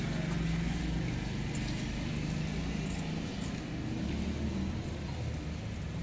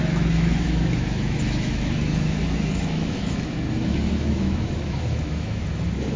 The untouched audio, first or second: first